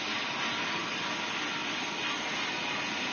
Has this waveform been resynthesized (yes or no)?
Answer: no